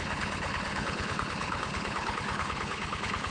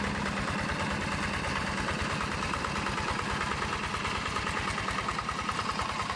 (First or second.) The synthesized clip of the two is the first